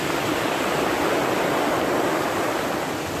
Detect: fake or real real